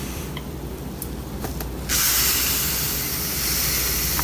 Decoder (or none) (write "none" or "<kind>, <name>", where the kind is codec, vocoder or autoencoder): none